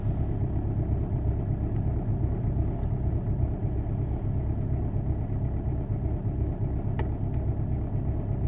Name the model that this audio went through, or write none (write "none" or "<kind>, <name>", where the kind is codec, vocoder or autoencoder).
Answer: none